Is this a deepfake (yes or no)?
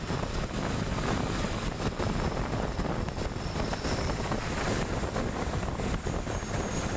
no